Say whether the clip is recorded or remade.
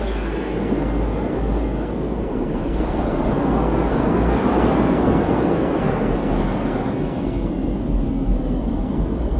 remade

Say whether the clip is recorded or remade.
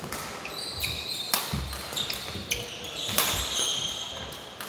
recorded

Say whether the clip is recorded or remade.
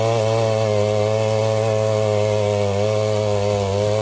recorded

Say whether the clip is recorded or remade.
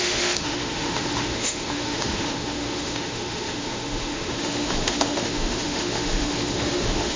remade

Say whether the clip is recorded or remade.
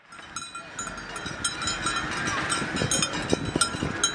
recorded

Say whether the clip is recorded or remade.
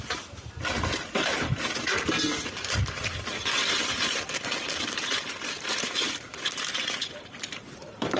remade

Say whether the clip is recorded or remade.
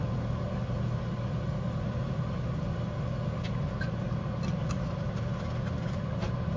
recorded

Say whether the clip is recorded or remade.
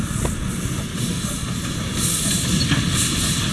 recorded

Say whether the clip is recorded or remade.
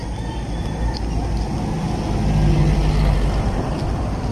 recorded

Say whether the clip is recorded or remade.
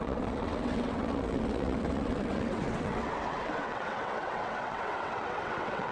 remade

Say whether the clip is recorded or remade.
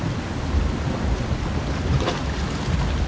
recorded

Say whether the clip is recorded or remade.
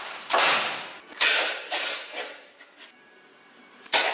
recorded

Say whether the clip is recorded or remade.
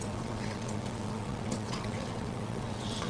remade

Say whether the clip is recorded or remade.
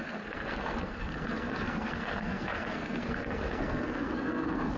remade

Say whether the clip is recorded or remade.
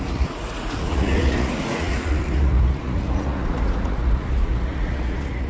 remade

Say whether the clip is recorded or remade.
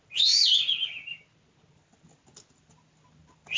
recorded